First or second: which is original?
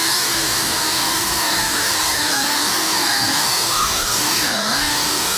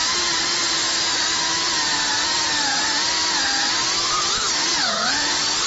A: second